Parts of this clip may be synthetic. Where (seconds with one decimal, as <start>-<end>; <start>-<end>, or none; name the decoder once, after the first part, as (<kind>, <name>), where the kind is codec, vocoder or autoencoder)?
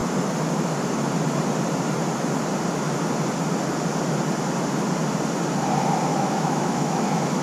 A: 6.1-7.4 (autoencoder, DAC-VAE)